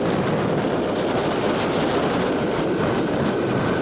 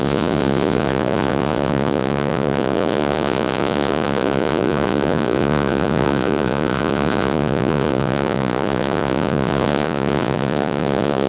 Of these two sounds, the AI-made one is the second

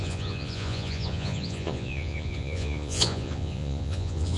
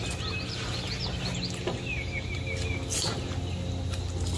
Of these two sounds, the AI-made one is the first